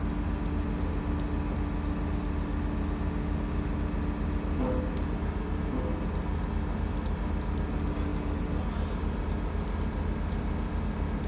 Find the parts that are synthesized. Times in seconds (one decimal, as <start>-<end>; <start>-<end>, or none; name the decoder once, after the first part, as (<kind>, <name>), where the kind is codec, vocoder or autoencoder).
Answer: none